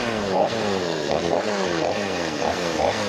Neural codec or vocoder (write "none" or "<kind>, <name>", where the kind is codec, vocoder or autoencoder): codec, SNAC